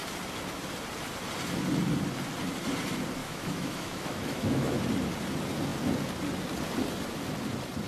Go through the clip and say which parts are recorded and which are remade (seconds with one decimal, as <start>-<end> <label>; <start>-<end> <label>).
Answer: 0.0-3.2 recorded; 3.2-4.8 remade; 4.8-7.9 recorded